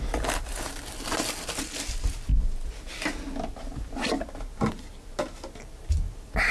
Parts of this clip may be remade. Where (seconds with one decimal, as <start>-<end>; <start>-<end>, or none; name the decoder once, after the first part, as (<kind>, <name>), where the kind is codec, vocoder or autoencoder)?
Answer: none